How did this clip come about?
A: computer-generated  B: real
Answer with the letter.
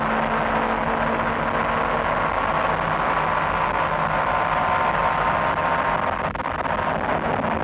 B